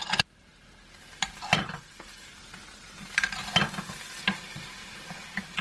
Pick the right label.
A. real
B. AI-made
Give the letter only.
A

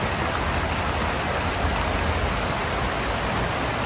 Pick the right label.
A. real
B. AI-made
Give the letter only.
A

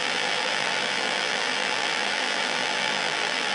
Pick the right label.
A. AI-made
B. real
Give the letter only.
A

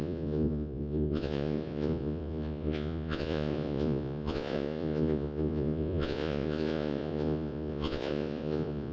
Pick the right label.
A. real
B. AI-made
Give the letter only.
B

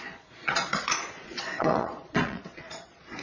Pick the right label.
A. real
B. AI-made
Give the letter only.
B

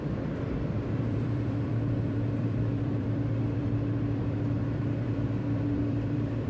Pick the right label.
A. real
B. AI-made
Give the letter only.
B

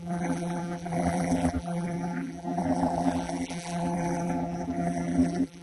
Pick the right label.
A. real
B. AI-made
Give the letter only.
B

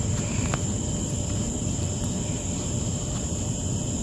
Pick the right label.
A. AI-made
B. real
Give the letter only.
A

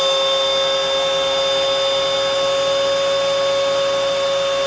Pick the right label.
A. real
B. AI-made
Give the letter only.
A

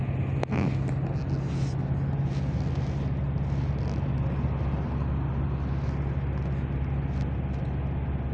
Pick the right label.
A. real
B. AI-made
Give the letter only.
A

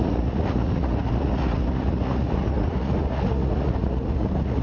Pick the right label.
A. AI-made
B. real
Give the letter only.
A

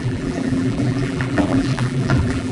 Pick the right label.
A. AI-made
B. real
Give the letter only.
A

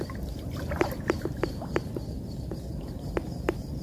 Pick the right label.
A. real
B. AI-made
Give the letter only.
A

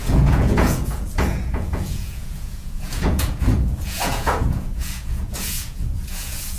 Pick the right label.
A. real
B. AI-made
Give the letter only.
B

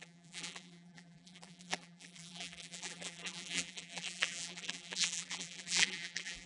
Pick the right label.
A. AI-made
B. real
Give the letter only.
A